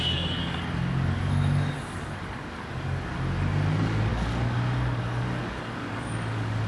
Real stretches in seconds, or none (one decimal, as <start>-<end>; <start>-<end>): none